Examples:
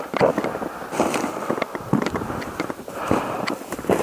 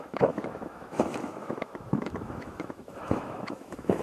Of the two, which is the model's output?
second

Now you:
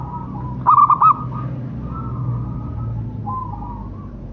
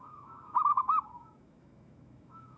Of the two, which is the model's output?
second